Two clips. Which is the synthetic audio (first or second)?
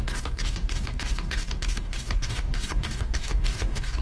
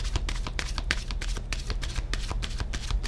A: first